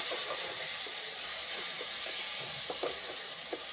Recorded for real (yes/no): no